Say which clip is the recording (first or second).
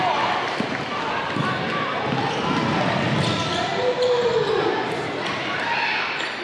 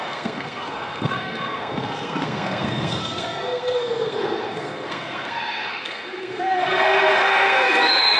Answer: first